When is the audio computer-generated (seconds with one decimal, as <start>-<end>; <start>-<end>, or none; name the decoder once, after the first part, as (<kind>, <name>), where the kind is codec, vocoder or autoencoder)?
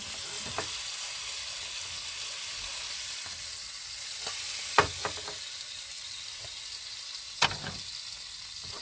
none